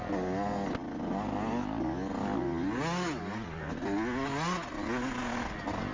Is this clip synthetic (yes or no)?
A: no